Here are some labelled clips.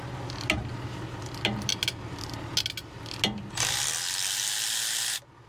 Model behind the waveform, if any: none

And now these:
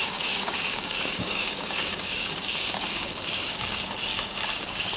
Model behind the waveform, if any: codec, DAC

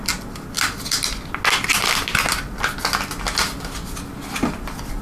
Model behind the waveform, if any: none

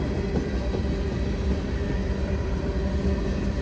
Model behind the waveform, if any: none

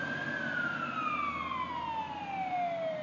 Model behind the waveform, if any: none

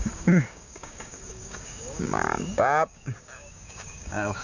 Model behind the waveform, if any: codec, DAC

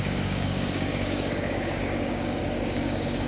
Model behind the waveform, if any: codec, DAC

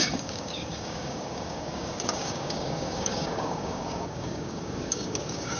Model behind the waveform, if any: codec, DAC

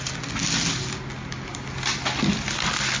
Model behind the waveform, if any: none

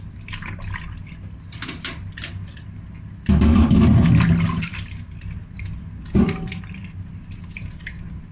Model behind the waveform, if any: none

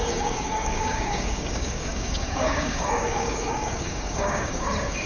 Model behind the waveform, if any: codec, DAC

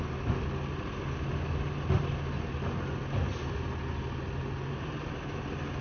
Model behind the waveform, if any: none